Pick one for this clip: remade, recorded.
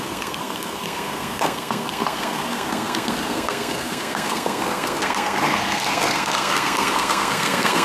remade